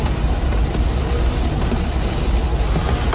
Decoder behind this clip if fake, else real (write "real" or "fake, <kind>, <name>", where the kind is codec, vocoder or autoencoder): real